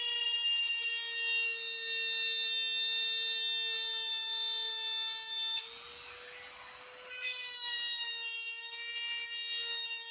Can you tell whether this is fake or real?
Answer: real